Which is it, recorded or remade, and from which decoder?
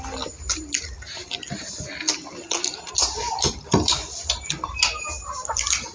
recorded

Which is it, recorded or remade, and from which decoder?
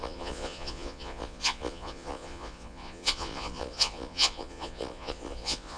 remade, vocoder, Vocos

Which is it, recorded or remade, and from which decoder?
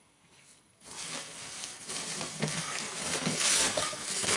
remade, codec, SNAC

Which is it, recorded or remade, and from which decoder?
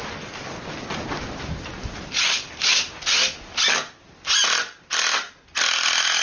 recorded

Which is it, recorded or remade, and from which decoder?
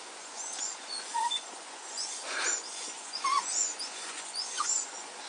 remade, vocoder, Vocos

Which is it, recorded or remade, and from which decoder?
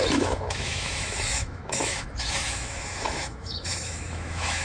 remade, autoencoder, DAC-VAE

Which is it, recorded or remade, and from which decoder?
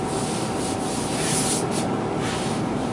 remade, vocoder, BigVGAN v2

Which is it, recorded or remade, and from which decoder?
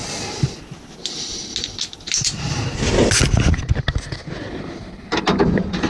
recorded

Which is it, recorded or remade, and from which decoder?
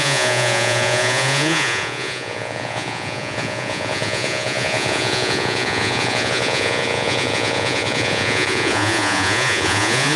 remade, vocoder, Vocos